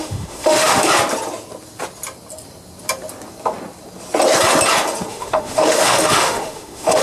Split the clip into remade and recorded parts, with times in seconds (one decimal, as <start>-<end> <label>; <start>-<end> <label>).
0.0-0.9 remade; 0.9-5.1 recorded; 5.1-7.0 remade